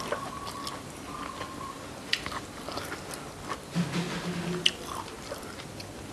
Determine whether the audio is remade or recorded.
recorded